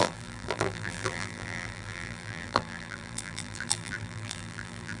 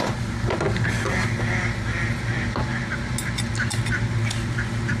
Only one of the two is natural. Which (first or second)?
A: second